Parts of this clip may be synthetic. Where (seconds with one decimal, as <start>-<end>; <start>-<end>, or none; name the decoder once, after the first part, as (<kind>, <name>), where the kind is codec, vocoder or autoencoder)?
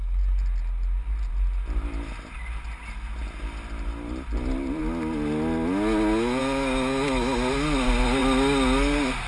none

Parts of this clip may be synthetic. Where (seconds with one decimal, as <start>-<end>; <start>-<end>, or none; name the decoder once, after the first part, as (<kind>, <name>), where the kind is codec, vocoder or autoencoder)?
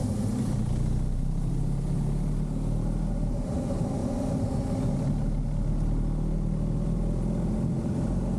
none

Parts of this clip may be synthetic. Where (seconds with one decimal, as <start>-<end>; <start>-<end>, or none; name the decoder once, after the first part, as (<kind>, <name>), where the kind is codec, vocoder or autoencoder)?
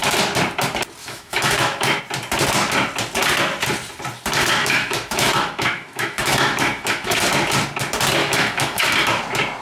1.0-2.0 (autoencoder, DAC-VAE); 4.6-7.2; 8.2-8.9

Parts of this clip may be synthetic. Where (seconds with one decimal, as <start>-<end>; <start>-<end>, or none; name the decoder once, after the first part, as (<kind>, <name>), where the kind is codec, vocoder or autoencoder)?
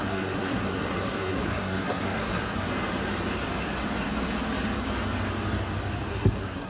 0.0-2.7 (codec, SNAC); 6.1-6.7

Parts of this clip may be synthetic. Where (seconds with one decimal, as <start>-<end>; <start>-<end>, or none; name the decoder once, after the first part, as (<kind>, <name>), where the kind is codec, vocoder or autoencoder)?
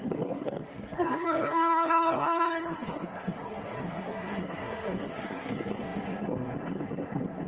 0.0-7.5 (codec, SNAC)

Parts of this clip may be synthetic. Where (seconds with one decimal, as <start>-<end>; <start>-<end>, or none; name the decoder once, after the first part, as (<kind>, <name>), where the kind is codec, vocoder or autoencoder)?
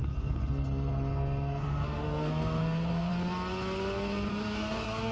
0.0-3.1 (codec, SNAC); 4.3-5.1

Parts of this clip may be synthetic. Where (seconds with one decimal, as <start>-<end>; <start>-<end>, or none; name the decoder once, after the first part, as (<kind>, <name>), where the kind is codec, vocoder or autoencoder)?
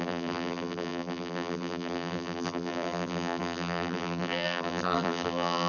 0.0-5.7 (vocoder, BigVGAN v2)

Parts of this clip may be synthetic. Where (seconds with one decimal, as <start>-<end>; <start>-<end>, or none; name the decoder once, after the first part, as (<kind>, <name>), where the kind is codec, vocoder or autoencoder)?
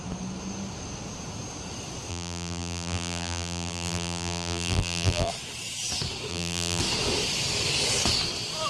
2.1-5.3 (vocoder, BigVGAN v2); 6.3-6.8